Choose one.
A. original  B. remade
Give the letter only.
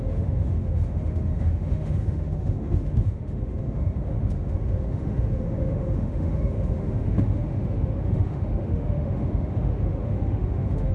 B